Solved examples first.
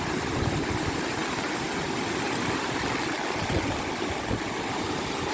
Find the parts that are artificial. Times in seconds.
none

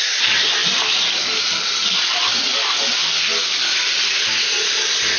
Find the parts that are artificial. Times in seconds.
none

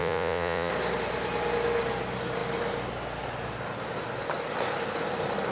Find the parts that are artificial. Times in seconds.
0.0-0.7 (vocoder, Vocos)